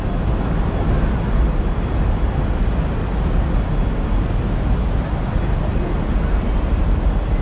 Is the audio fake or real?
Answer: real